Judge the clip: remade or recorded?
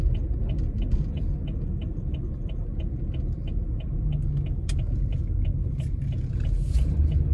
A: recorded